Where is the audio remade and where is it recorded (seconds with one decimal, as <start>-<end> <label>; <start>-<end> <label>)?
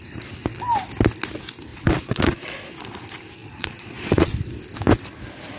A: 0.0-1.7 recorded; 1.7-2.7 remade; 2.7-3.4 recorded; 3.4-4.3 remade; 4.3-5.6 recorded